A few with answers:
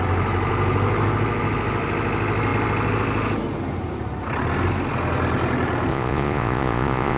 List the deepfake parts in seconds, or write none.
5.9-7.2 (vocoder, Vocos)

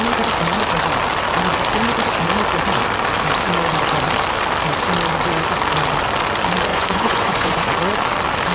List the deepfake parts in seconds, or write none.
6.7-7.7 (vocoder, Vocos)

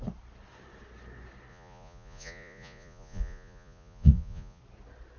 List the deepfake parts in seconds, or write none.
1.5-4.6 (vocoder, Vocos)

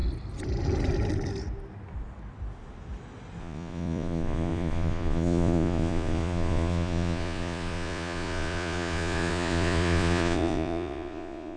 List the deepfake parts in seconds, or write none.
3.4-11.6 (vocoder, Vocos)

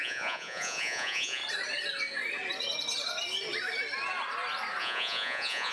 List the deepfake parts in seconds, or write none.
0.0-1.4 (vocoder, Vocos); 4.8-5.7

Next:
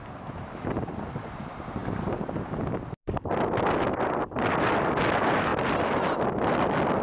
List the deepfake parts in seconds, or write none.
none

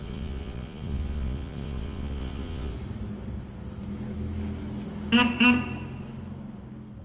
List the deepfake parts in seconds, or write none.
0.0-2.7 (vocoder, Vocos)